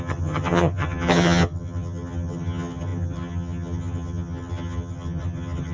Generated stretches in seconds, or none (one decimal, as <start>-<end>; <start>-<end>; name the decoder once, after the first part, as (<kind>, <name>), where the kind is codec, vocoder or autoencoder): 0.0-5.7 (vocoder, HiFi-GAN)